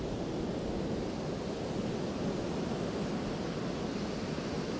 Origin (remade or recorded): recorded